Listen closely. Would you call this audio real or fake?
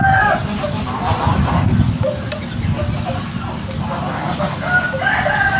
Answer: real